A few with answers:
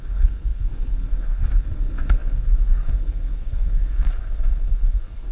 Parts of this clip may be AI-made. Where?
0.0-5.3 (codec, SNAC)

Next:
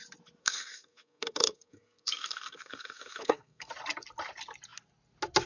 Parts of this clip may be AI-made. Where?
0.4-3.7 (codec, SNAC)

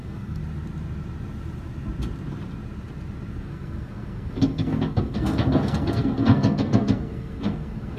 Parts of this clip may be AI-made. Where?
0.0-0.4 (codec, SNAC); 3.3-8.0

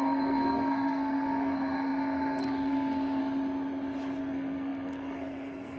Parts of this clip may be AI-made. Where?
0.0-3.2 (codec, SNAC); 4.2-5.8

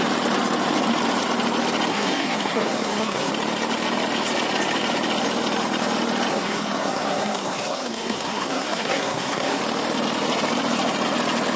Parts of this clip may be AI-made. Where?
1.9-3.3 (codec, SNAC); 6.3-9.6